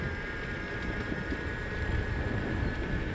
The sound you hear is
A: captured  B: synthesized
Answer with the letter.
A